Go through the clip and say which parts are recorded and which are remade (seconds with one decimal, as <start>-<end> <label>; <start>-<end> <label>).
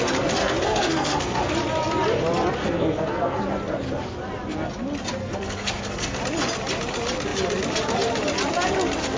0.0-0.4 recorded; 0.4-1.5 remade; 1.5-2.6 recorded; 2.6-3.4 remade; 3.4-5.2 recorded; 5.2-6.2 remade; 6.2-9.2 recorded